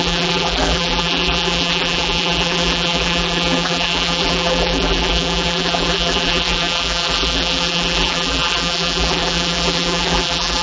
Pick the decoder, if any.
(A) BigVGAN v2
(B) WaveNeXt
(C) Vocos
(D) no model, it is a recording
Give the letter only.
A